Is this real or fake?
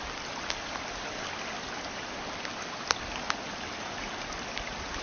real